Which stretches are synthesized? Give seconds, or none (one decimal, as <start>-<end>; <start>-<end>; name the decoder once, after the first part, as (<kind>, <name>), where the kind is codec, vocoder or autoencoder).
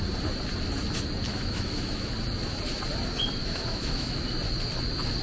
1.3-2.1 (autoencoder, DAC-VAE); 3.4-4.2